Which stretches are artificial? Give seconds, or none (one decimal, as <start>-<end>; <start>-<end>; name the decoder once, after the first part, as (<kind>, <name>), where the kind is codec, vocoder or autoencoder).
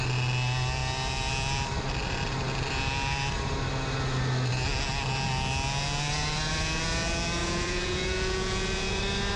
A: 7.4-9.0 (vocoder, Vocos)